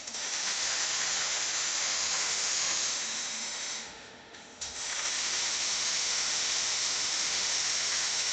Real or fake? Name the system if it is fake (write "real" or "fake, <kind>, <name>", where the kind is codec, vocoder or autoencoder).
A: fake, autoencoder, DAC-VAE